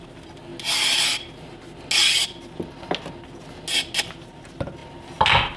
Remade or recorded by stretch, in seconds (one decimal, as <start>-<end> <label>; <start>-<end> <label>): 0.0-5.6 recorded